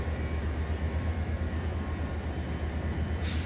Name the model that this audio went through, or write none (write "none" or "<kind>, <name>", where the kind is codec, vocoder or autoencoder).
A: none